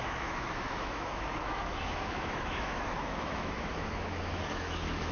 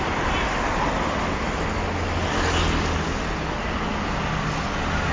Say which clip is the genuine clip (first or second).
second